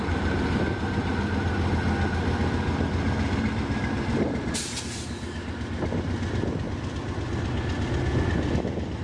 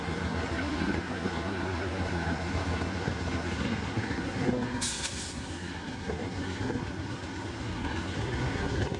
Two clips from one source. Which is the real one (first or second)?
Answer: first